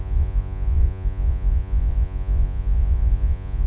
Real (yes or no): no